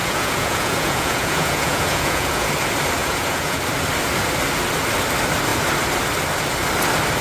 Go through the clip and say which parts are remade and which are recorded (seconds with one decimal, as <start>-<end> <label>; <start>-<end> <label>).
0.0-2.5 remade; 2.5-3.0 recorded; 3.0-3.6 remade; 3.6-7.2 recorded